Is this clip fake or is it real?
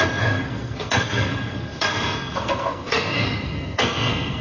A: fake